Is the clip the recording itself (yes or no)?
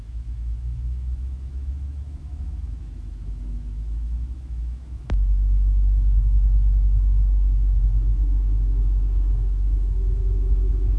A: no